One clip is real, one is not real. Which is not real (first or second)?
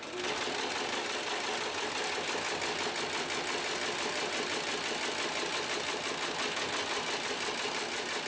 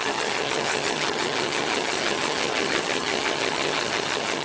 second